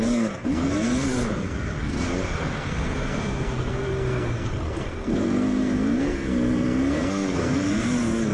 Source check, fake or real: fake